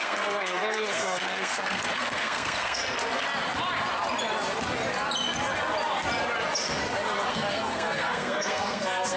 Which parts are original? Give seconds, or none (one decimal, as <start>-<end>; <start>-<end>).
2.8-7.3